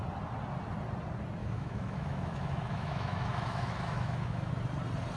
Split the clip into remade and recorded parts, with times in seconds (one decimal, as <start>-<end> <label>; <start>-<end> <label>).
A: 0.0-1.4 recorded; 1.4-4.5 remade; 4.5-5.2 recorded